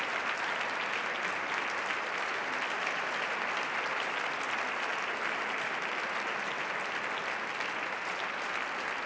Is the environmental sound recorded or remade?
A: recorded